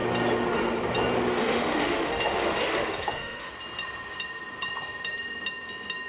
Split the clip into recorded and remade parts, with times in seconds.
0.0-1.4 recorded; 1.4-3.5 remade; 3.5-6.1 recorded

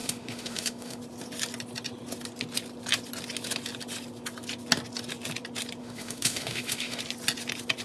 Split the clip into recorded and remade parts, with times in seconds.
0.0-1.0 remade; 1.0-5.8 recorded; 5.8-7.0 remade; 7.0-7.8 recorded

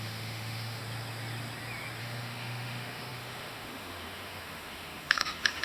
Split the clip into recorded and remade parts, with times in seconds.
0.0-0.8 remade; 0.8-2.0 recorded; 2.0-5.6 remade

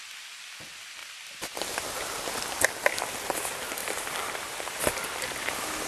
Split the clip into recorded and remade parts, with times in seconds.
0.0-3.8 recorded; 3.8-4.8 remade; 4.8-5.9 recorded

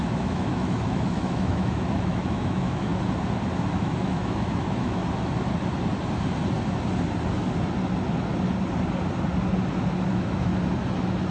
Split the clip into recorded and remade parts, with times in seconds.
0.0-2.9 remade; 2.9-3.7 recorded; 3.7-5.0 remade; 5.0-10.1 recorded; 10.1-10.5 remade; 10.5-11.3 recorded